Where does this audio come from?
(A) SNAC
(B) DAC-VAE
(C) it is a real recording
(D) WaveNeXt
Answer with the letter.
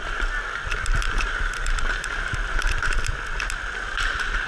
C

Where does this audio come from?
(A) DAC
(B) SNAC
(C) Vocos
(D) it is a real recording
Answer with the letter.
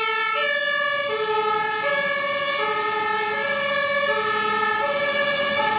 D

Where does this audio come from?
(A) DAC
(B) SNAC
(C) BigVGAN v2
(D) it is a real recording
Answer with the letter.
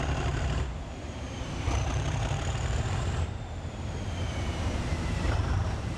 C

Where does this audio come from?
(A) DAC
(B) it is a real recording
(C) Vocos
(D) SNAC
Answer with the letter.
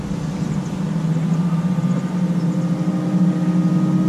B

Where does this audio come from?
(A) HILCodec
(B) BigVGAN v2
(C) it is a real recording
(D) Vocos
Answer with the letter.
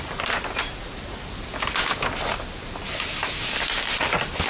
C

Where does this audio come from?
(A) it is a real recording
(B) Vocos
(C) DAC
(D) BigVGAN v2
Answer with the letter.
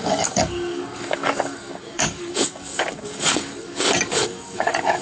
C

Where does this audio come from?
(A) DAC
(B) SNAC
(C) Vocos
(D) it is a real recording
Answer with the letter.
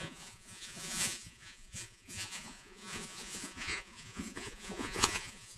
C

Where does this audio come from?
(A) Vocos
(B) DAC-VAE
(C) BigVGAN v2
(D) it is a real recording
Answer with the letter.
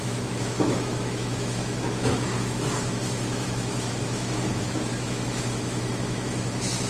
B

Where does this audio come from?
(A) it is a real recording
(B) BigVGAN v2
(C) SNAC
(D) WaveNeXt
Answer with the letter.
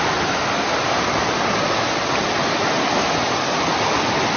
A